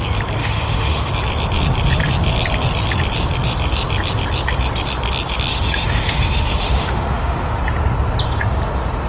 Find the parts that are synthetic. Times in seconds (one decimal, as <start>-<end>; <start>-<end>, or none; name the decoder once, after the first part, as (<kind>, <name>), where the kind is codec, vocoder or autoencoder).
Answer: 0.4-1.1 (autoencoder, DAC-VAE); 5.5-7.6